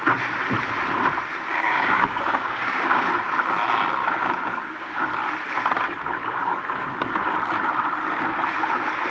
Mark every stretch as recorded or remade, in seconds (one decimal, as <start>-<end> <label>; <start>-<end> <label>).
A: 0.0-1.5 recorded; 1.5-3.1 remade; 3.1-4.0 recorded; 4.0-5.0 remade; 5.0-9.1 recorded